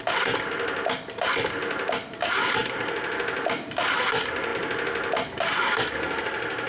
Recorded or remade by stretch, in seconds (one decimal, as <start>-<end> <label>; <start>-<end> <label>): 0.0-6.7 recorded